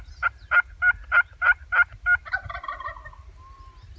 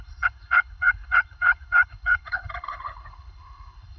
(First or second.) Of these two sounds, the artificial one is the second